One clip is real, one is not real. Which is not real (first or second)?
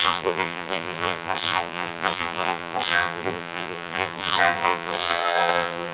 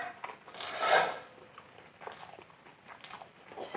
first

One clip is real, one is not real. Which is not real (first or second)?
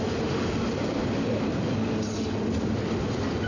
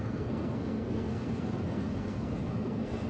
second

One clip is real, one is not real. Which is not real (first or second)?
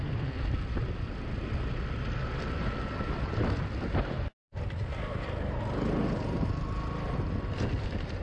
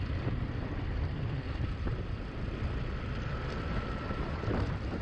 second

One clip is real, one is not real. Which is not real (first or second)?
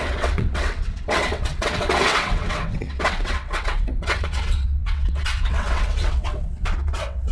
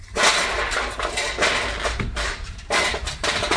first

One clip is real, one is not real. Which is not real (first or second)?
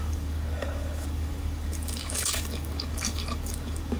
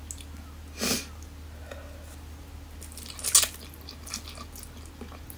first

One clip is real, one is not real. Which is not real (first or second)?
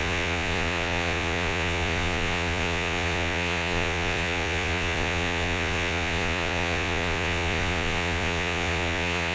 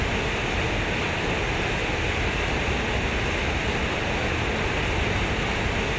first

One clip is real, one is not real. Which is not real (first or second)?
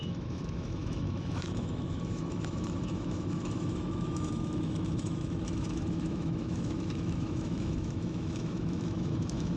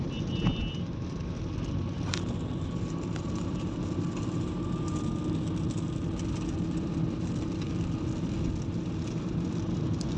first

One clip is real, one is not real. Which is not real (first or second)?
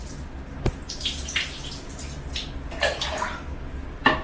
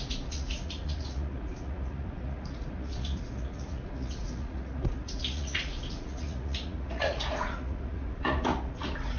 second